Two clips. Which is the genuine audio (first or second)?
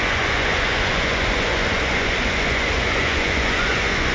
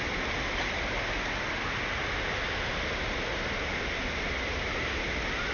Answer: second